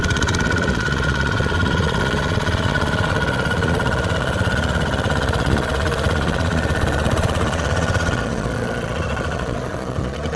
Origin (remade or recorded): remade